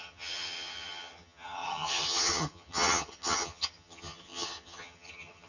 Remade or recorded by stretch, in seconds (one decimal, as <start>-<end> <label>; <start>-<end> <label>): 0.0-5.5 remade